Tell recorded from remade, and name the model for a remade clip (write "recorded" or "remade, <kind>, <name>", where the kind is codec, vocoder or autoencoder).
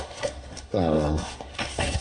remade, codec, SNAC